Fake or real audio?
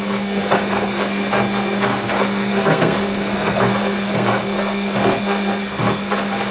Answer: fake